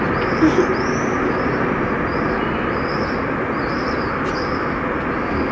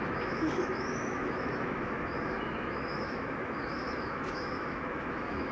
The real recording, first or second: first